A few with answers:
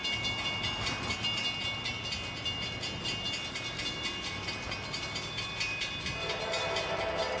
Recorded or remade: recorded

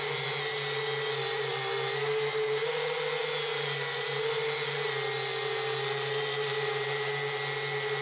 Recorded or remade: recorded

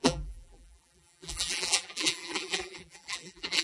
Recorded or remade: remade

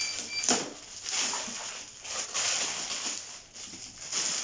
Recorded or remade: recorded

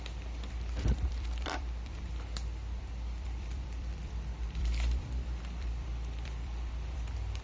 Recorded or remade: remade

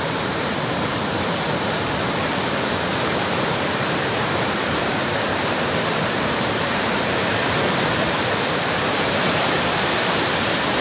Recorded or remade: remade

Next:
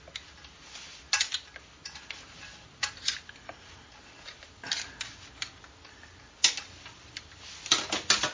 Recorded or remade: recorded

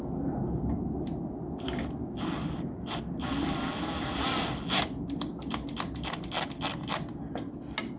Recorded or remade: recorded